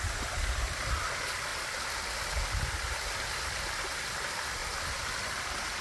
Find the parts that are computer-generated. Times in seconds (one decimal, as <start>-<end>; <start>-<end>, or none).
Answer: 0.0-1.5; 3.8-4.6; 5.2-5.8